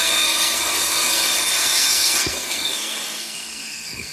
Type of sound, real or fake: fake